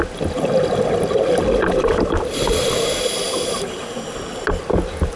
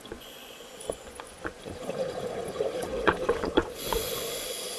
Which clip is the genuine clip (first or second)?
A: first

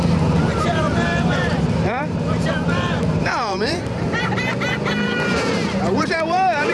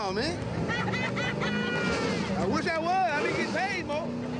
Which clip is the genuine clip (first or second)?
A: second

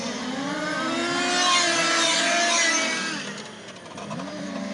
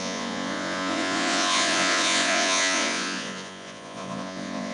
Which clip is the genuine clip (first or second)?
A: first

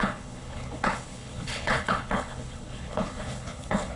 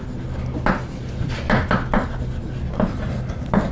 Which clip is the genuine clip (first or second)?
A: second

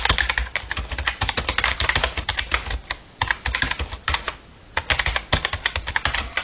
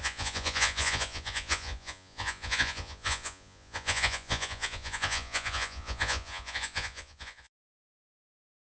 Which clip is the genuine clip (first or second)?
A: first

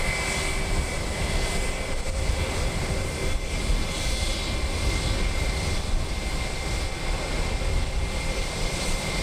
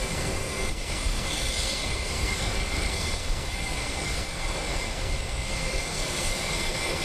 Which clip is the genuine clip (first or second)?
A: first